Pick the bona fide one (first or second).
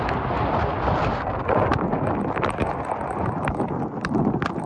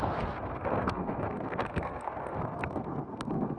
first